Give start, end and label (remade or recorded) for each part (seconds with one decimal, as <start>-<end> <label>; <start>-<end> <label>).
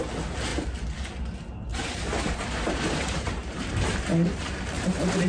0.0-1.7 recorded; 1.7-5.3 remade